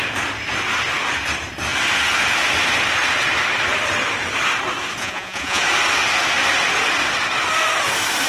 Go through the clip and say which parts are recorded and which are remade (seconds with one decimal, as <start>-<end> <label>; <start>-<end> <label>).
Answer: 0.0-5.0 recorded; 5.0-5.6 remade; 5.6-8.3 recorded

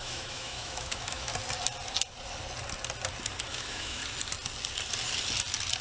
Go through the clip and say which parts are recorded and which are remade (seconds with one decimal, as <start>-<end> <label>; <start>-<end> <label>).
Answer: 0.0-1.3 remade; 1.3-3.5 recorded; 3.5-4.0 remade; 4.0-5.8 recorded

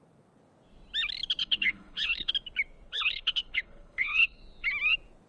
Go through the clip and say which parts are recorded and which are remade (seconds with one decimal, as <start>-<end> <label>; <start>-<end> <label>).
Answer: 0.0-1.4 recorded; 1.4-2.3 remade; 2.3-2.9 recorded; 2.9-4.4 remade; 4.4-5.3 recorded

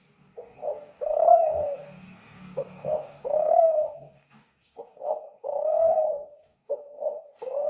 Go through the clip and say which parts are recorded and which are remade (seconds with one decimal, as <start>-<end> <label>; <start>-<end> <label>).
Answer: 0.0-7.7 remade

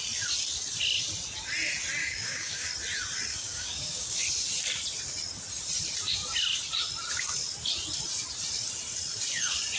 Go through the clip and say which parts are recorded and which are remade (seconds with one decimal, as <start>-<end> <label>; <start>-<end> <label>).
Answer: 0.0-2.0 recorded; 2.0-2.7 remade; 2.7-3.3 recorded; 3.3-4.2 remade; 4.2-9.8 recorded

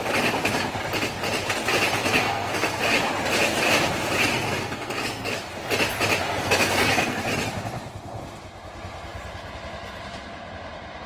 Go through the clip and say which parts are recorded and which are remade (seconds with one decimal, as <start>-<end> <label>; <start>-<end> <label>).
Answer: 0.0-2.0 recorded; 2.0-2.8 remade; 2.8-4.3 recorded; 4.3-5.3 remade; 5.3-6.3 recorded; 6.3-7.2 remade; 7.2-11.1 recorded

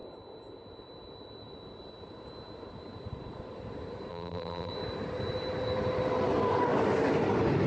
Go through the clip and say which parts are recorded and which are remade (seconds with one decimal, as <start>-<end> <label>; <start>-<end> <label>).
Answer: 0.0-4.1 recorded; 4.1-4.7 remade; 4.7-7.7 recorded

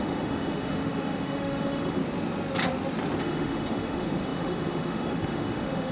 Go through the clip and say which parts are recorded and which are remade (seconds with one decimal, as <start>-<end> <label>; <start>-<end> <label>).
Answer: 0.0-2.0 remade; 2.0-3.2 recorded; 3.2-5.9 remade